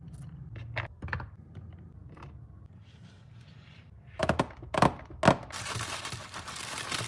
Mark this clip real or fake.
real